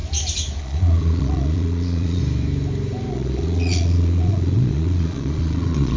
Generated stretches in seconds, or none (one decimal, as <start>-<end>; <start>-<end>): 0.6-2.2; 3.1-6.0